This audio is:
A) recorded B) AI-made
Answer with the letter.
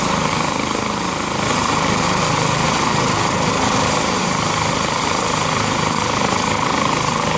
A